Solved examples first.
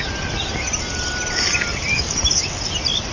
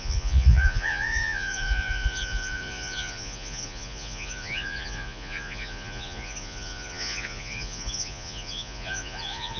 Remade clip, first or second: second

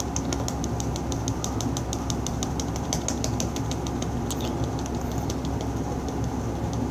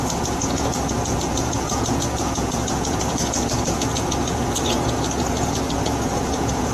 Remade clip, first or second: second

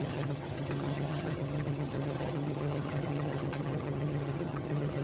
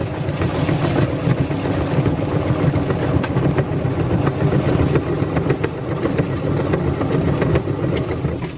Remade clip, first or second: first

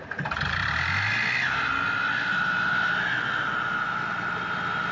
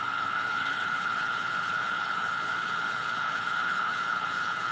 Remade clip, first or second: second